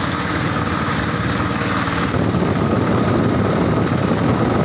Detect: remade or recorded recorded